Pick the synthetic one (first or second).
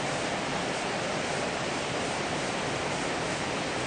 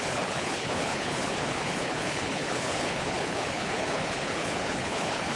second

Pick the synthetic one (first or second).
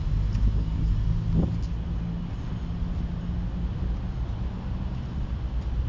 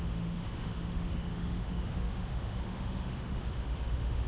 second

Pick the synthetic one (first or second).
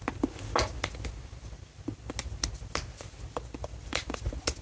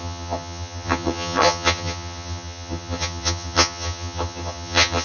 second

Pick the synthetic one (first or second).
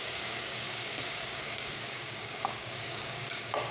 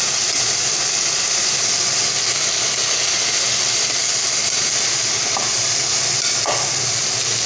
first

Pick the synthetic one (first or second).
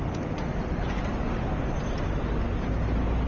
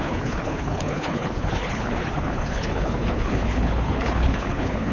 second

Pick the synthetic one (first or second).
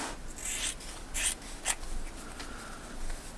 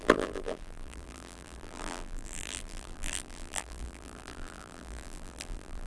second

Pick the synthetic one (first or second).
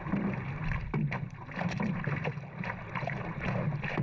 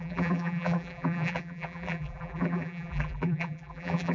second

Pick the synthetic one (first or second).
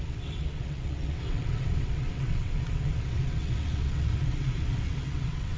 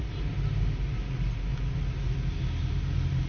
first